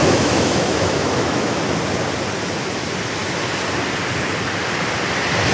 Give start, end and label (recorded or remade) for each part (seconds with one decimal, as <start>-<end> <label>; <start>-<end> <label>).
0.0-1.6 remade; 1.6-5.5 recorded

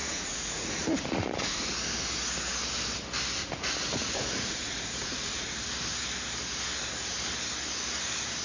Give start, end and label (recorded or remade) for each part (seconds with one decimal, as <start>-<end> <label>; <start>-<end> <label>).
0.0-1.7 remade; 1.7-3.4 recorded; 3.4-5.5 remade; 5.5-8.4 recorded

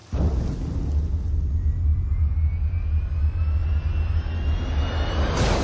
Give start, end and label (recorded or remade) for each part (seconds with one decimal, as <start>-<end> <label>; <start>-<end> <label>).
0.0-5.6 recorded

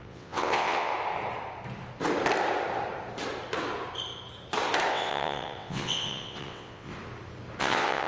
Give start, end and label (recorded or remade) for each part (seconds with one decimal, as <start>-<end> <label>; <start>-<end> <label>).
0.0-0.9 remade; 0.9-4.9 recorded; 4.9-6.9 remade; 6.9-7.6 recorded; 7.6-8.1 remade

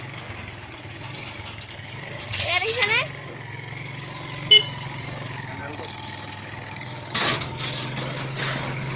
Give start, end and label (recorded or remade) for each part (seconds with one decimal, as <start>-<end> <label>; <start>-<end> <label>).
0.0-9.0 remade

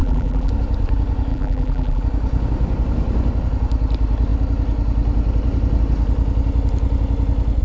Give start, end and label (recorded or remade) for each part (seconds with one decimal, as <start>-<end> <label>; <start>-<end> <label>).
0.0-0.5 remade; 0.5-1.3 recorded; 1.3-2.0 remade; 2.0-7.6 recorded